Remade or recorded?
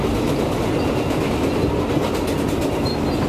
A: recorded